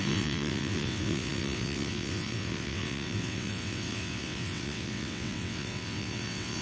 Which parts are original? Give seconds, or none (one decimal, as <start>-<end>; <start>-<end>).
none

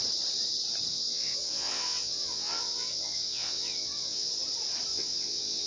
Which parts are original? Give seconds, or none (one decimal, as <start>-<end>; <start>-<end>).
0.0-0.9; 4.3-4.9

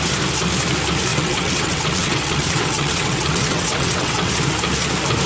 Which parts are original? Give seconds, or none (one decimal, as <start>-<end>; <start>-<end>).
0.0-1.1; 4.3-5.3

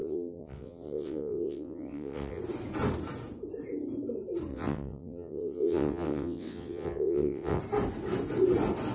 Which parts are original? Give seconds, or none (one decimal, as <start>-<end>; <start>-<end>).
2.4-4.5; 7.6-8.9

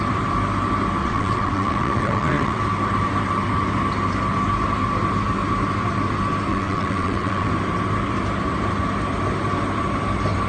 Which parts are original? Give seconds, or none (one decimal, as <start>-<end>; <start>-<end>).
0.0-1.0; 2.6-6.5; 7.5-10.5